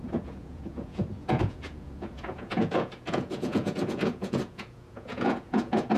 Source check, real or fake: fake